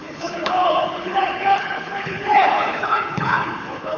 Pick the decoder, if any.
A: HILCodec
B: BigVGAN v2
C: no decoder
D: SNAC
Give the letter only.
A